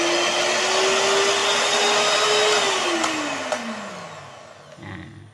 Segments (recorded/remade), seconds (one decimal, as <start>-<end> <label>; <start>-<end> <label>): 0.0-5.3 recorded